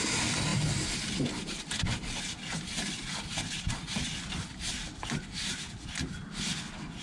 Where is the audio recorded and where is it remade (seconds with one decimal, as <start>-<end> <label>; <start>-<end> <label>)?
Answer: 0.0-7.0 recorded